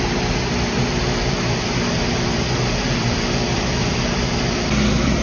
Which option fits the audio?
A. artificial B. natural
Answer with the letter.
A